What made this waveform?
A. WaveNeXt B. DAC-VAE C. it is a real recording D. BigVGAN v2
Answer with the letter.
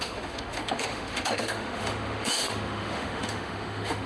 B